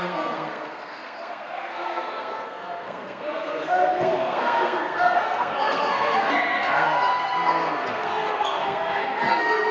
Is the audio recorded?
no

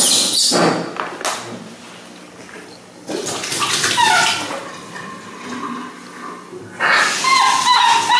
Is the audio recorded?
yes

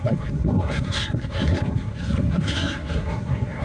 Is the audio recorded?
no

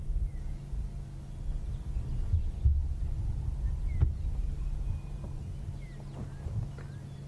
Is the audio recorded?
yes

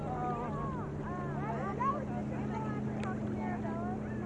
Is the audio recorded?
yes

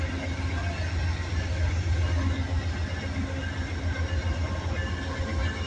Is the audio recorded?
yes